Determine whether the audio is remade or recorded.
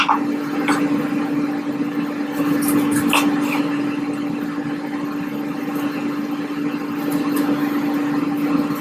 recorded